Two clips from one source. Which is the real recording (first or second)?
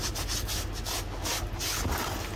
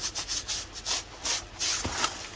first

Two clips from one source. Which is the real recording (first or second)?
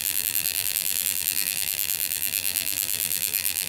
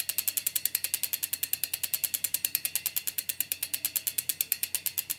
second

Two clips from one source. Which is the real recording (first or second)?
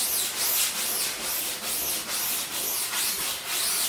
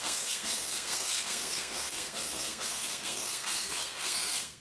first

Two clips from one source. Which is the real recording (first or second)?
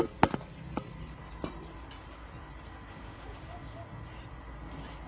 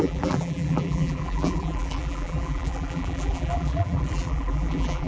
first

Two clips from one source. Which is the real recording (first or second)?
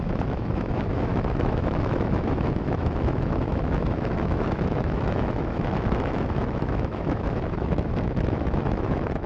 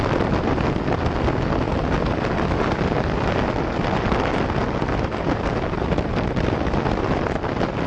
second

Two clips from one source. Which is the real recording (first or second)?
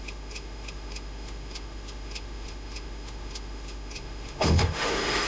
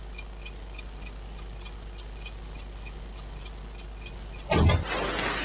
second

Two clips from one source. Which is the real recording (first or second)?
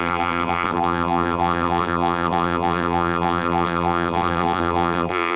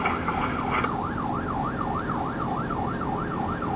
second